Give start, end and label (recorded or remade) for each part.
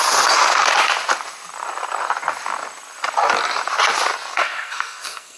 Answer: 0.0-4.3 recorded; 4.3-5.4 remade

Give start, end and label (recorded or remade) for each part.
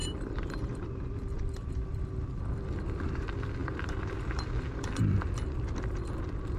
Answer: 0.0-2.0 remade; 2.0-3.6 recorded; 3.6-5.0 remade; 5.0-6.6 recorded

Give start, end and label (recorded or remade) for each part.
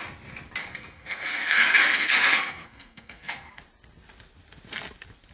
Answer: 0.0-0.6 recorded; 0.6-3.6 remade; 3.6-5.3 recorded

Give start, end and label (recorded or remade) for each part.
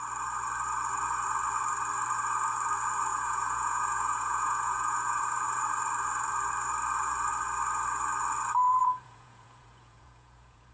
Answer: 0.0-3.1 recorded; 3.1-5.2 remade; 5.2-8.7 recorded; 8.7-10.7 remade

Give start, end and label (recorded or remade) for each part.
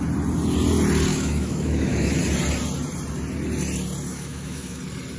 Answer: 0.0-1.1 recorded; 1.1-2.2 remade; 2.2-4.1 recorded; 4.1-4.8 remade; 4.8-5.2 recorded